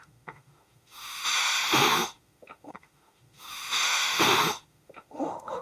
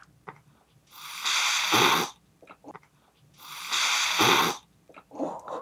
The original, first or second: second